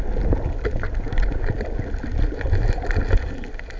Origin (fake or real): real